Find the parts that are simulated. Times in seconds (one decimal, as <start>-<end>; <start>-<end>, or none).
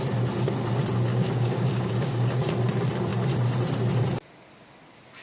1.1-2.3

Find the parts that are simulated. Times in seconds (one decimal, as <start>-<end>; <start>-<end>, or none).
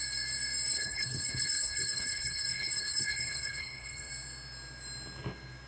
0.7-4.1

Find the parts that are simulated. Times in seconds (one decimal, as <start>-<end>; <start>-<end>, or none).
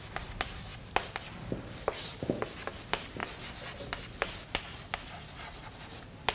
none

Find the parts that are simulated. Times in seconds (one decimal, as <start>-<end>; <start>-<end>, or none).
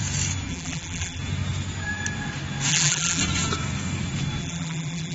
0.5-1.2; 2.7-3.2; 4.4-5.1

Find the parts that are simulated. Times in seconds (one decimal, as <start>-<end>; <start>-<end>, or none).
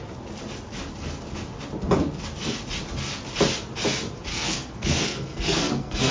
4.3-6.1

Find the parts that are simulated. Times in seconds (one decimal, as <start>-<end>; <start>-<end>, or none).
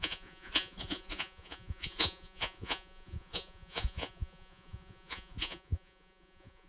0.0-6.7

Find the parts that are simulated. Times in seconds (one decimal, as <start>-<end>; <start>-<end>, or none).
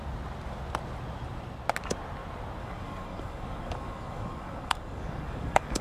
2.6-5.8